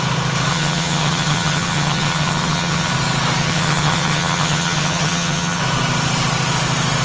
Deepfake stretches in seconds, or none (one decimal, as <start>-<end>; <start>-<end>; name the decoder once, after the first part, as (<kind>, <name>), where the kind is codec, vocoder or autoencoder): 0.5-2.9 (vocoder, HiFi-GAN); 3.4-5.6